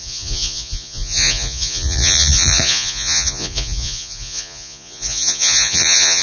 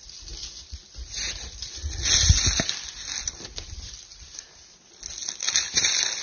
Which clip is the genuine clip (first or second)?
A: second